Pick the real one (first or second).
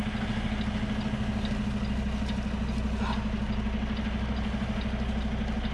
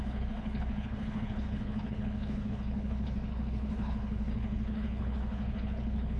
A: first